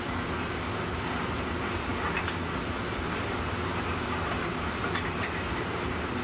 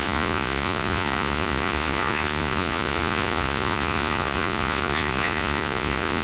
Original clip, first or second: first